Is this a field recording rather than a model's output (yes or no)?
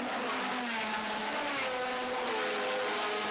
yes